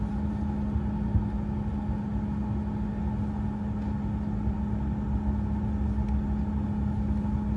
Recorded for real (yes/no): yes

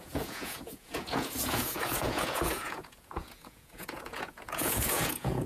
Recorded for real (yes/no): no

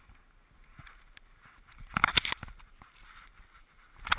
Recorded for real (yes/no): yes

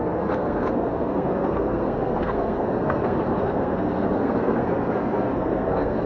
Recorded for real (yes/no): no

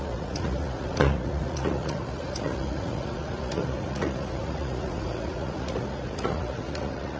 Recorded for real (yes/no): no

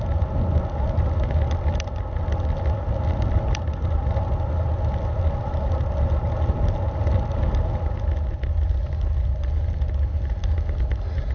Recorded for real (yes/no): yes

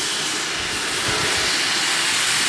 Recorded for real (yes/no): yes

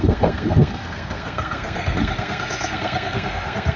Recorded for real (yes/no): no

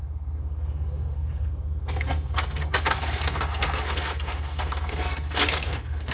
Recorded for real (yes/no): no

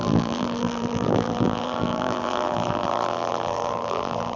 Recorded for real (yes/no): no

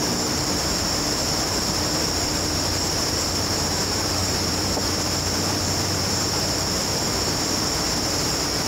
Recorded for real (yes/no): no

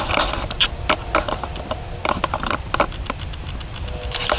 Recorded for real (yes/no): no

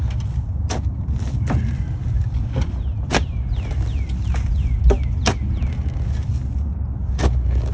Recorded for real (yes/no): yes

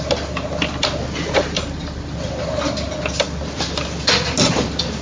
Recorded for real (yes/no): yes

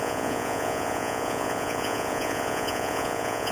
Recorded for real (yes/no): no